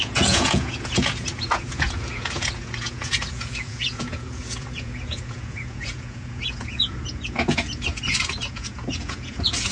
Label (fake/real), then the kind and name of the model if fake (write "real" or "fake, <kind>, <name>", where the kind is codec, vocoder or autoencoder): fake, vocoder, Vocos